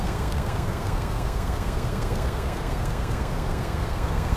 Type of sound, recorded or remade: remade